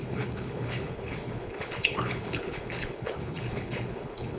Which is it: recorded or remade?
remade